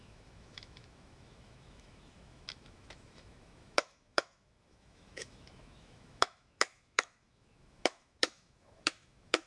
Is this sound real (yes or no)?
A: no